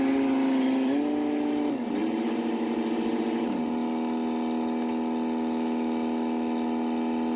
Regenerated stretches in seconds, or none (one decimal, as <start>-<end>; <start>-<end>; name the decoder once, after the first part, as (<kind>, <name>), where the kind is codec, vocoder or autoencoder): 2.0-3.2 (vocoder, BigVGAN v2)